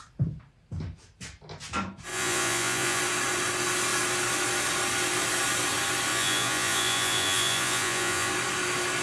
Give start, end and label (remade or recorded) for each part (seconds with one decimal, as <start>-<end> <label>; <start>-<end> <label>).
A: 0.0-2.1 recorded; 2.1-3.0 remade; 3.0-6.1 recorded; 6.1-8.3 remade; 8.3-9.0 recorded